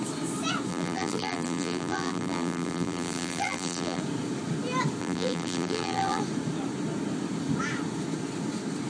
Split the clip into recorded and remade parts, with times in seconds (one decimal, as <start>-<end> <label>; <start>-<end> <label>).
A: 0.0-0.7 recorded; 0.7-4.0 remade; 4.0-5.0 recorded; 5.0-6.2 remade; 6.2-8.9 recorded